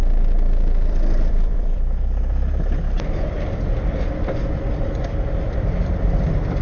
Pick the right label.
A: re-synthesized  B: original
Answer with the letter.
A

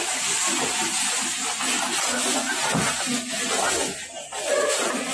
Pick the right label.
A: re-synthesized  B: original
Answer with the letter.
B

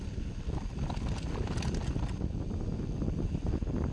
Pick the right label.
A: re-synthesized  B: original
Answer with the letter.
B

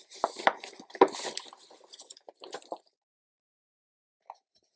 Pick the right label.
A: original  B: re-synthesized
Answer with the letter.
B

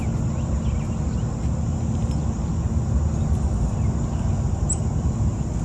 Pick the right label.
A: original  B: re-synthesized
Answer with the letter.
A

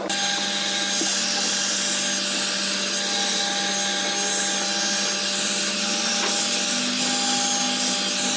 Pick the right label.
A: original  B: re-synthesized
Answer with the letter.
A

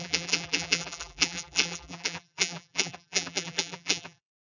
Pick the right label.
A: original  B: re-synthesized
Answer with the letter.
B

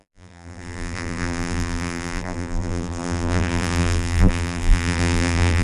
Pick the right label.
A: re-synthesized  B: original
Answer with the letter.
A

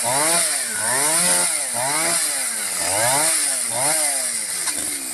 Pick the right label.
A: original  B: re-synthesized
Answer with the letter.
A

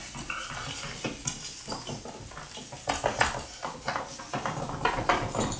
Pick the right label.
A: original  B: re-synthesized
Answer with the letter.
A